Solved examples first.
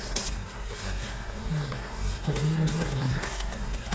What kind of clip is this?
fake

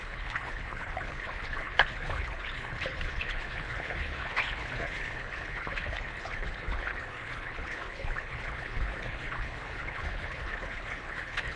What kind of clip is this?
fake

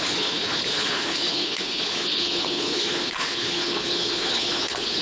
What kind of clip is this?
fake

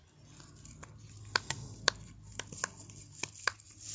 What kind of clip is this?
real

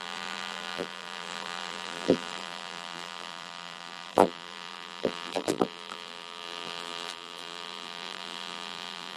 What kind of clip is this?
fake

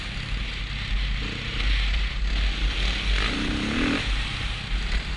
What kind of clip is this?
real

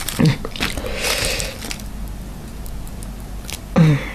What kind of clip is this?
real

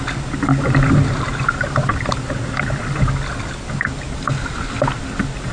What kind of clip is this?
real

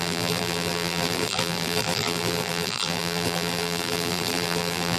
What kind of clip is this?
fake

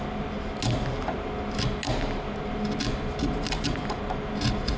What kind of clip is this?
real